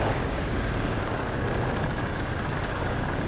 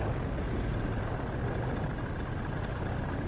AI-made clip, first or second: first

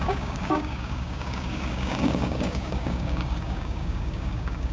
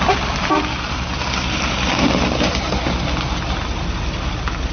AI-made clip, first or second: first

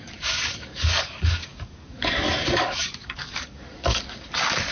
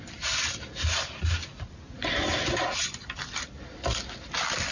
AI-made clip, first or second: first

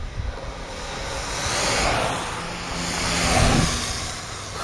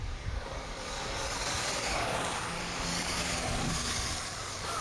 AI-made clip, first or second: second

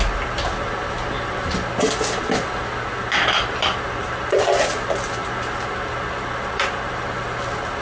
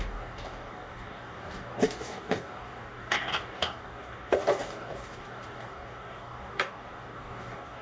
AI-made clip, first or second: second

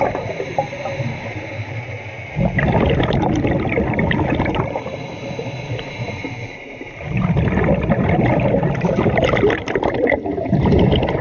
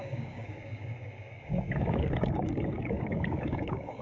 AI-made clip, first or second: second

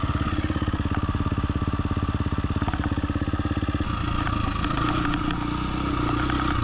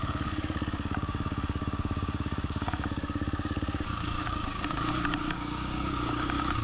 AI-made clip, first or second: second